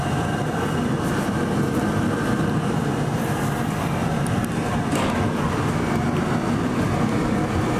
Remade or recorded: recorded